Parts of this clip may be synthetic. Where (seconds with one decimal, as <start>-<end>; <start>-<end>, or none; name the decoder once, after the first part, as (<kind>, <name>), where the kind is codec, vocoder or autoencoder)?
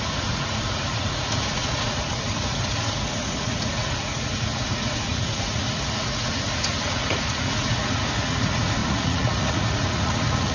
0.0-10.5 (vocoder, Vocos)